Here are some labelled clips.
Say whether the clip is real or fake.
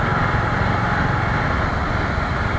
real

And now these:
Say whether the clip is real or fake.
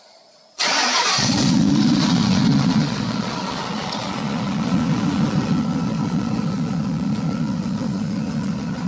fake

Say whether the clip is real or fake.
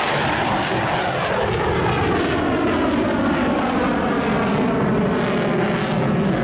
real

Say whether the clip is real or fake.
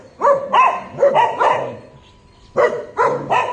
real